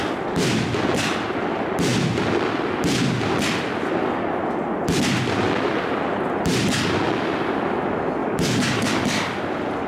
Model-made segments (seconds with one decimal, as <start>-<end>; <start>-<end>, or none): 8.2-8.9